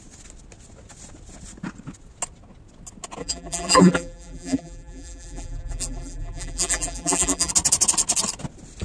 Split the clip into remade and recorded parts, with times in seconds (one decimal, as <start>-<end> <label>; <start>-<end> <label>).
0.0-3.2 recorded; 3.2-7.5 remade; 7.5-8.8 recorded

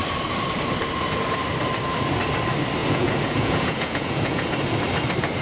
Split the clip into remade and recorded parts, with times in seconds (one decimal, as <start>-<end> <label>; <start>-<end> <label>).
0.0-2.8 recorded; 2.8-4.5 remade; 4.5-5.4 recorded

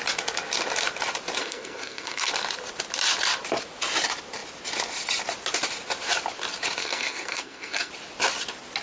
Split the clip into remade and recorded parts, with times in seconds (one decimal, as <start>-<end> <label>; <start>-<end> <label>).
0.0-1.4 recorded; 1.4-2.3 remade; 2.3-6.8 recorded; 6.8-7.9 remade; 7.9-8.8 recorded